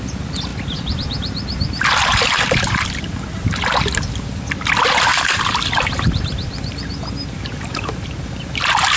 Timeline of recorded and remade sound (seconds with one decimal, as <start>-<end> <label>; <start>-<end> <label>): 0.0-9.0 recorded